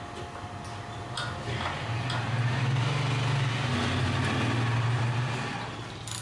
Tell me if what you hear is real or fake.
real